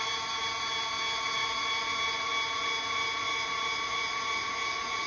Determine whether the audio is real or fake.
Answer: real